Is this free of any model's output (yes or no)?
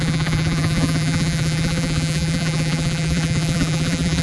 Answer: no